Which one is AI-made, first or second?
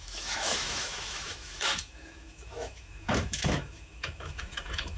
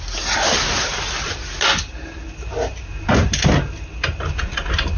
first